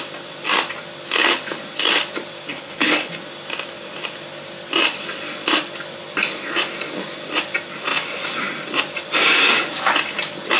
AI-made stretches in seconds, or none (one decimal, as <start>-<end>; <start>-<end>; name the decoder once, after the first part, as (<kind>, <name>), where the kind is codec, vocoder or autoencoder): 2.5-3.1 (codec, HILCodec)